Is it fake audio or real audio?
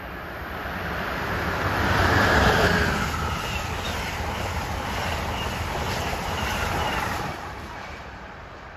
fake